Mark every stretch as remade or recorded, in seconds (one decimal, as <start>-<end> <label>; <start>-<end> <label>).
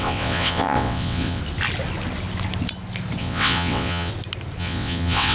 0.0-1.4 remade; 1.4-3.2 recorded; 3.2-4.1 remade; 4.1-4.6 recorded; 4.6-5.3 remade